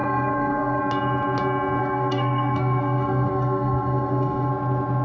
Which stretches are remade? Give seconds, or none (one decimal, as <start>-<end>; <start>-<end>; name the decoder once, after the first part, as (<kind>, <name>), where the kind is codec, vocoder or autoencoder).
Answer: 0.0-0.8 (codec, SNAC); 1.8-4.5